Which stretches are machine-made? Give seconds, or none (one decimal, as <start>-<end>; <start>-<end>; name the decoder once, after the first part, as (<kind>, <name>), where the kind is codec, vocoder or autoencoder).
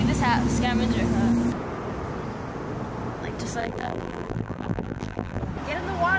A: 3.6-5.4 (vocoder, BigVGAN v2)